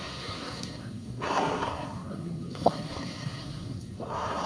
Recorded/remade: remade